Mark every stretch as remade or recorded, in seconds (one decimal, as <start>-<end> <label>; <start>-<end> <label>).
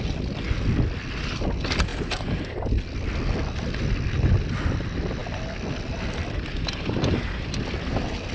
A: 0.0-8.3 recorded